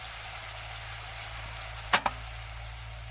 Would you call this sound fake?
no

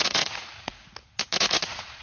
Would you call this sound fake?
yes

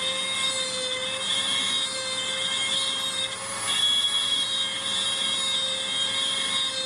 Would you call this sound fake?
no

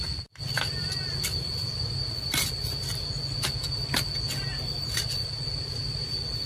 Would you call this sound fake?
no